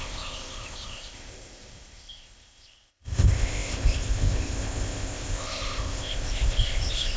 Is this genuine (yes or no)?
no